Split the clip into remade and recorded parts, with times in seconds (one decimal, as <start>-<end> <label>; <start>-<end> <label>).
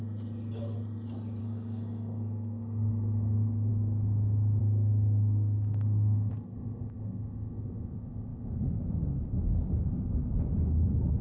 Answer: 0.0-1.4 recorded; 1.4-3.7 remade; 3.7-4.6 recorded; 4.6-6.3 remade; 6.3-11.2 recorded